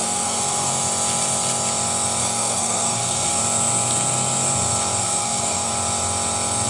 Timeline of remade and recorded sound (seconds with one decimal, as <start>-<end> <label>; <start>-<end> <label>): 0.0-0.7 remade; 0.7-2.2 recorded; 2.2-3.4 remade; 3.4-5.0 recorded; 5.0-5.7 remade; 5.7-6.7 recorded

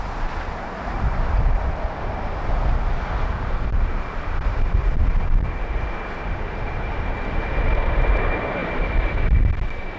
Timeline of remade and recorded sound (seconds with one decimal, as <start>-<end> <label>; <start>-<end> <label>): 0.0-4.8 recorded; 4.8-5.7 remade; 5.7-8.6 recorded; 8.6-9.2 remade; 9.2-10.0 recorded

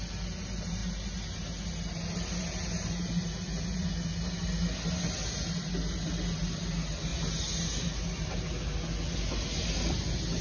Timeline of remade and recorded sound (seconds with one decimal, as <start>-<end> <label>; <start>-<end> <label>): 0.0-10.4 recorded

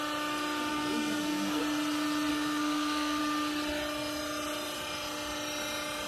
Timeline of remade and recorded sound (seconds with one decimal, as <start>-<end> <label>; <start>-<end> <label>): 0.0-0.7 recorded; 0.7-1.6 remade; 1.6-2.3 recorded; 2.3-3.2 remade; 3.2-6.1 recorded

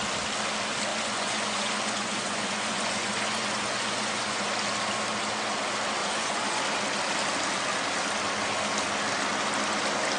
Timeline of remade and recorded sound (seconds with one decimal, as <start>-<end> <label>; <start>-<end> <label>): 0.0-0.9 recorded; 0.9-4.5 remade; 4.5-6.0 recorded; 6.0-6.6 remade; 6.6-10.2 recorded

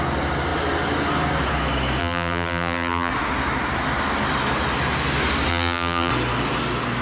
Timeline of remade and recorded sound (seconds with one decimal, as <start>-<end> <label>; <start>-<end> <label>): 0.0-2.0 recorded; 2.0-3.1 remade; 3.1-5.5 recorded; 5.5-6.1 remade; 6.1-7.0 recorded

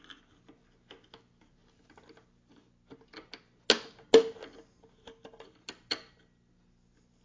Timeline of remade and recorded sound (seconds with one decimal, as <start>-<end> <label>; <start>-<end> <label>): 0.0-7.2 recorded